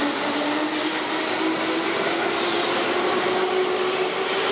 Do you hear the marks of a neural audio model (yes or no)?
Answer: no